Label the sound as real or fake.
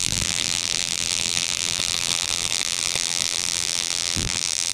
fake